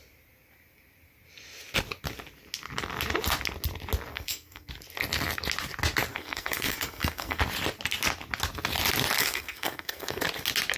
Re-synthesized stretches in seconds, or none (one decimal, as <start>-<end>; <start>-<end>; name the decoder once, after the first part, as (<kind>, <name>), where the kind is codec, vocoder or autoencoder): 4.1-4.7 (codec, SNAC); 6.1-7.4; 9.2-10.2